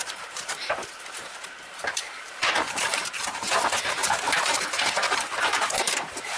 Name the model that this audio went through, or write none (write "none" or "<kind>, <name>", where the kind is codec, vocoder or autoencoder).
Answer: vocoder, BigVGAN v2